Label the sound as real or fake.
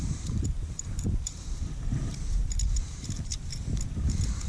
fake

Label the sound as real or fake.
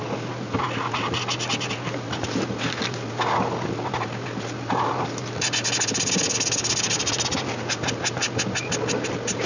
real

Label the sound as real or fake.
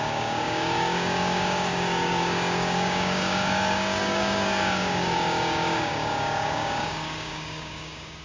fake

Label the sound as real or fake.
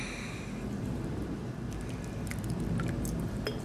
real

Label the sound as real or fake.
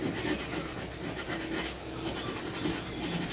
real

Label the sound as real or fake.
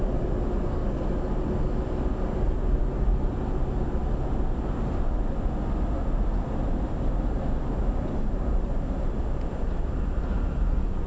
real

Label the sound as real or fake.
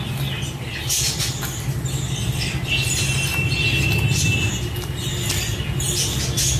real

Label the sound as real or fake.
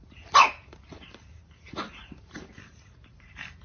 fake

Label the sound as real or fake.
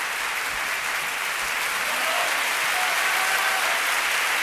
real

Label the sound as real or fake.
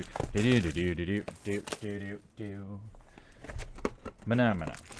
real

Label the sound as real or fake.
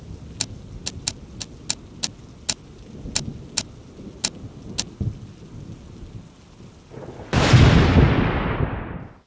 real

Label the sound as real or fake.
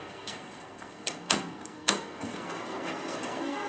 fake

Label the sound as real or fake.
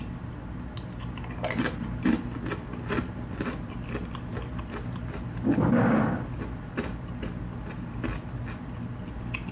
real